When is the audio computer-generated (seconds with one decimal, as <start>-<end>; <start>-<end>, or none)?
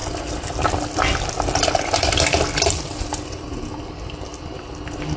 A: 4.3-4.8